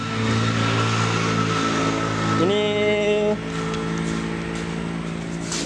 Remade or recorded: recorded